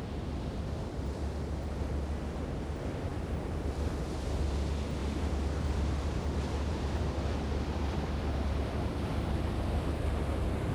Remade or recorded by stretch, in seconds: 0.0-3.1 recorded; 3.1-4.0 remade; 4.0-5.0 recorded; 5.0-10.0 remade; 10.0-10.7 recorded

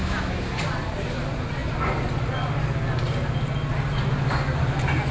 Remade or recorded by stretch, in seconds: 0.0-0.5 remade; 0.5-5.1 recorded

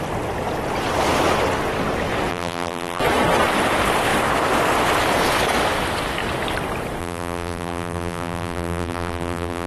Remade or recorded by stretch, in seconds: 0.0-2.3 recorded; 2.3-3.0 remade; 3.0-7.0 recorded; 7.0-9.7 remade

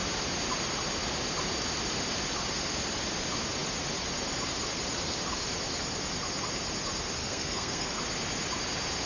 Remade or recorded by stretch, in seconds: 0.0-7.2 recorded; 7.2-8.0 remade; 8.0-9.1 recorded

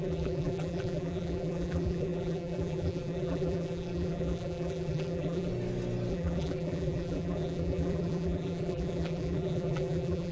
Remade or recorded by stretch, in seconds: 0.0-5.5 remade; 5.5-6.1 recorded; 6.1-10.3 remade